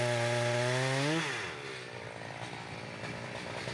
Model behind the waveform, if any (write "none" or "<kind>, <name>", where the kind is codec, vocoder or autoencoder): none